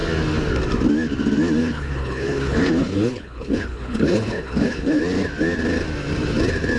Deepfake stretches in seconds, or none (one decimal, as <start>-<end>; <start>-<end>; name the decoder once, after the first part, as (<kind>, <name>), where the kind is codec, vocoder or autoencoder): 1.6-5.0 (codec, HILCodec)